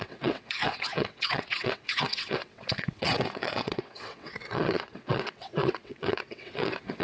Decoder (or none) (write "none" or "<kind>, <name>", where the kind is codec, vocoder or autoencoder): vocoder, WaveNeXt